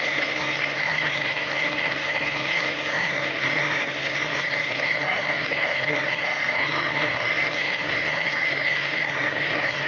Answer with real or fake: fake